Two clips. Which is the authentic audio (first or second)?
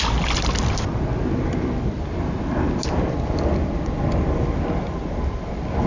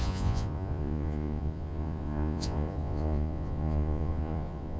first